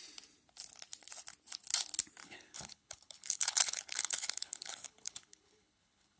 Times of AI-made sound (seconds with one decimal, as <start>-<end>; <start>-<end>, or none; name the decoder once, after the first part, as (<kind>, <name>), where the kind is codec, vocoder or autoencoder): 2.2-6.2 (codec, HILCodec)